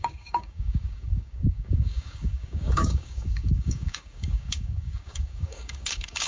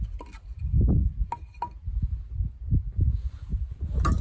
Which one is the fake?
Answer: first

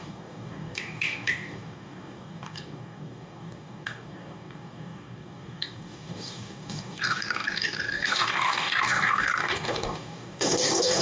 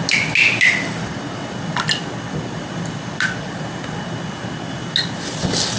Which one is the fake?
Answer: first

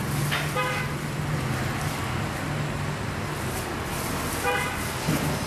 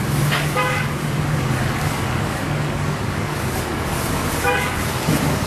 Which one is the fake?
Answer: second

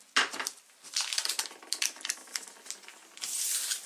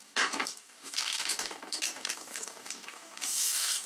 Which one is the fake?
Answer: second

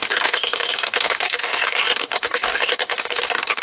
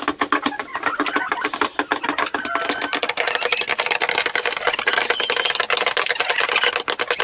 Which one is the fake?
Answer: first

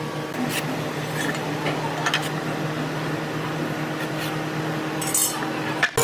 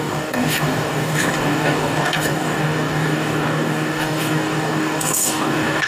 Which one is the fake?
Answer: second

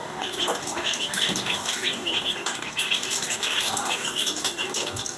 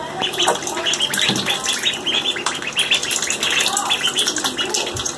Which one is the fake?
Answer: first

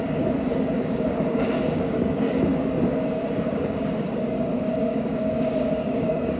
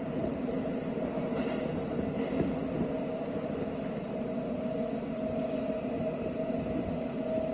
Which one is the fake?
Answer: first